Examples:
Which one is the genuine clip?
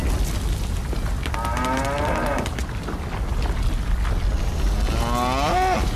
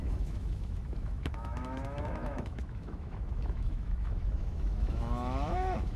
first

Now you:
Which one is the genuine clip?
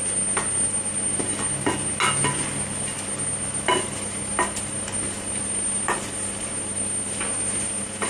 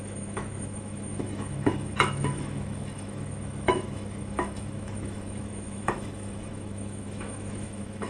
first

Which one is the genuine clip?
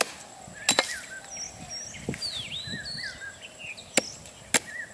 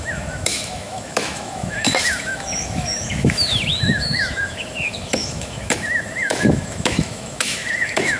first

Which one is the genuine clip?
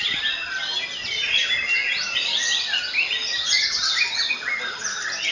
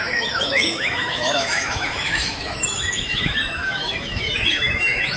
first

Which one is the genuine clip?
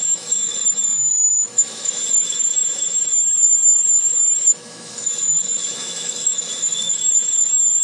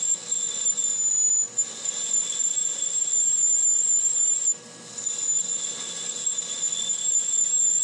second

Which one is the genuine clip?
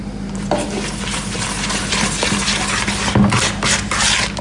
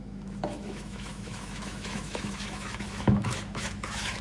first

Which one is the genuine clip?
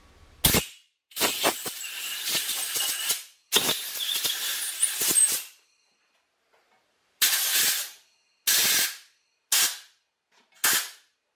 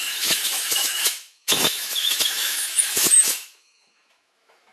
first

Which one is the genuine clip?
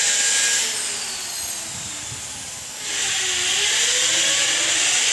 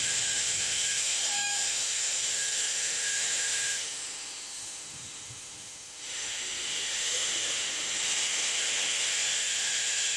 first